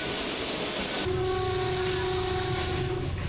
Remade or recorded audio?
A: recorded